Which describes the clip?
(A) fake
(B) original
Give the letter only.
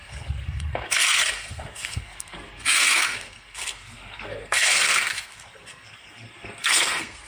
A